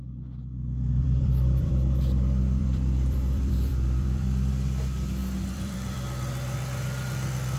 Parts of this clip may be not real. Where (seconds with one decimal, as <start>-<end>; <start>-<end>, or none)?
1.0-1.7; 2.6-4.5; 5.2-7.6